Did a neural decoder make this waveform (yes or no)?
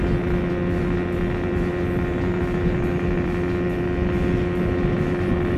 no